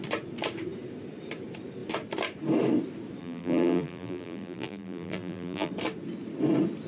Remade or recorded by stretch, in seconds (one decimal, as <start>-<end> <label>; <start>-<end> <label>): 0.0-3.2 recorded; 3.2-5.7 remade; 5.7-6.9 recorded